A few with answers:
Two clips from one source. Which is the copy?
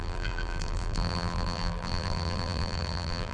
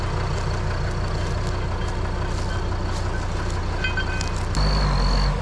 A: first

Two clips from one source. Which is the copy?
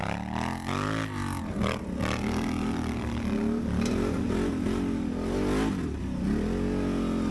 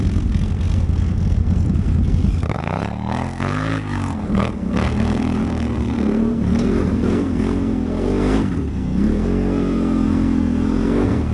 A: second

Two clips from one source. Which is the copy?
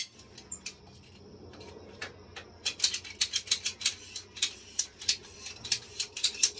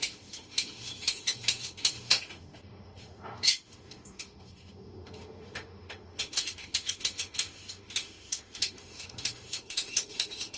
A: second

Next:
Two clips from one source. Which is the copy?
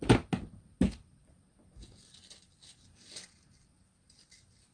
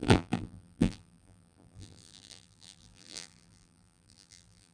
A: second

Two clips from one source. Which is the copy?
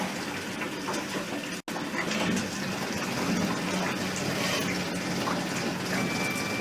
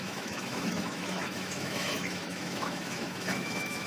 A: second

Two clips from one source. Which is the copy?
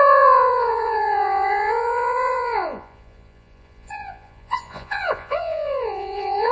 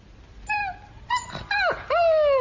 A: first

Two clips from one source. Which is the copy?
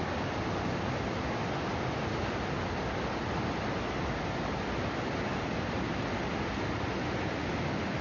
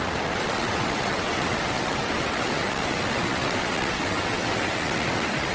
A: second